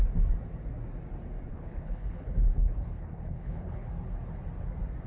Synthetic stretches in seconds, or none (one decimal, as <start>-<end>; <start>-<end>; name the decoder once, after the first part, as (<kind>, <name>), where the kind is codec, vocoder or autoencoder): 1.5-3.9 (codec, HILCodec)

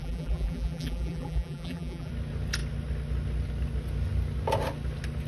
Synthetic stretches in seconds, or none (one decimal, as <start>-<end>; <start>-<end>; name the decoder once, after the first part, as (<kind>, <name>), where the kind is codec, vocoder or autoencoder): 0.0-2.1 (vocoder, BigVGAN v2)

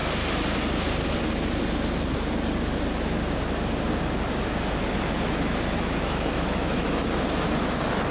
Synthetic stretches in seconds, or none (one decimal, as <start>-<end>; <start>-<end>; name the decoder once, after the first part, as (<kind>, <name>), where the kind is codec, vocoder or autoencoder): 4.9-8.1 (autoencoder, DAC-VAE)

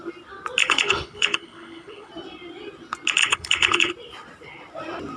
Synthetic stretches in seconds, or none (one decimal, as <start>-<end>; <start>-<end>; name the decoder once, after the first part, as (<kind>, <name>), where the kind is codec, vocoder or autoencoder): 0.6-2.1 (codec, HILCodec); 3.2-3.9

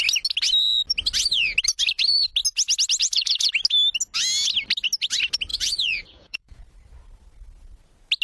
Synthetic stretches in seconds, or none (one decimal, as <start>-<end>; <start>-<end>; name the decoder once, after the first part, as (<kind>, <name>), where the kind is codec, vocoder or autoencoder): 3.0-3.5 (vocoder, Vocos); 5.5-6.6